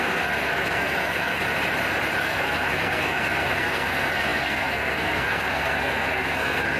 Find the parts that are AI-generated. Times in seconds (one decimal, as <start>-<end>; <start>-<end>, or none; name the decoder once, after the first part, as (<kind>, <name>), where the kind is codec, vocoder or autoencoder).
0.0-1.4 (codec, SNAC); 2.2-6.8